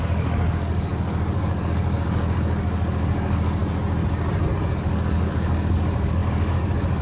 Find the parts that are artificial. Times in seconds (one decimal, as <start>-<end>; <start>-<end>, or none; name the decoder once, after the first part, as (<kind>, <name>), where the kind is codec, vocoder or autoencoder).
0.0-3.6 (codec, DAC); 4.8-7.0